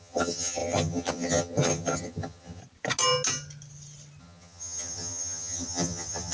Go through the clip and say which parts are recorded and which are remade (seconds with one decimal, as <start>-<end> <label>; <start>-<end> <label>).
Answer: 0.0-2.6 remade; 2.6-4.2 recorded; 4.2-6.3 remade